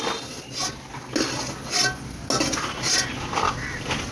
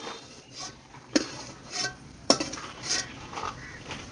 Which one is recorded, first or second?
first